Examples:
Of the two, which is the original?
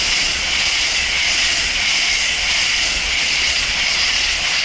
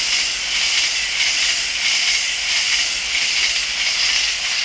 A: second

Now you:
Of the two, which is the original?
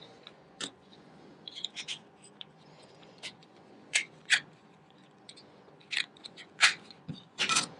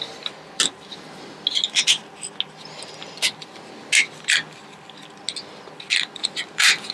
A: second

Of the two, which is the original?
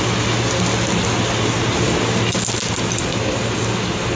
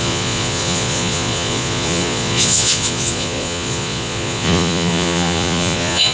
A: first